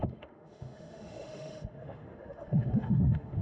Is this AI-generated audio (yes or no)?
yes